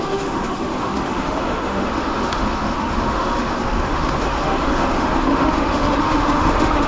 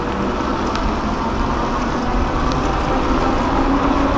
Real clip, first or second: second